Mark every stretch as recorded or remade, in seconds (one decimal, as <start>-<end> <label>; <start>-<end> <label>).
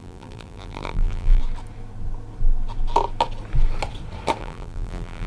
0.0-1.4 remade; 1.4-4.4 recorded; 4.4-5.3 remade